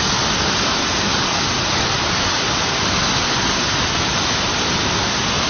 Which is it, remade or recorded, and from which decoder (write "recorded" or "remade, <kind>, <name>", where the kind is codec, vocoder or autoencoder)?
recorded